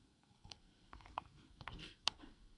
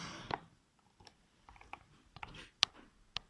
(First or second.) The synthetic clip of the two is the first